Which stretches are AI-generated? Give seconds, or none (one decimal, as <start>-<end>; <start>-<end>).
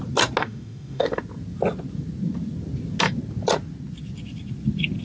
0.4-1.2